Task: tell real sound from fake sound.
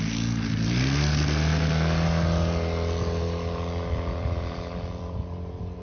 real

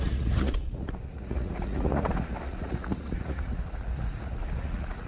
fake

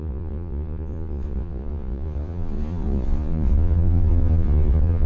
fake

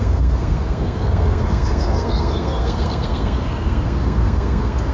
fake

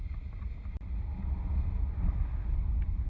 real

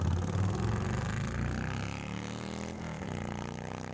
real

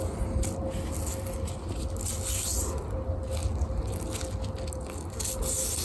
real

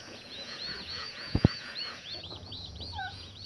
fake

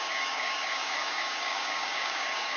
fake